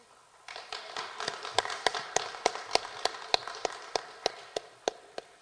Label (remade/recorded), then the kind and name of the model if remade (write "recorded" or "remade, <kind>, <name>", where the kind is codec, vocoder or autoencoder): recorded